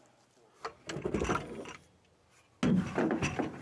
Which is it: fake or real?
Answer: real